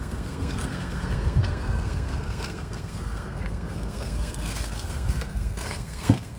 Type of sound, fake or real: fake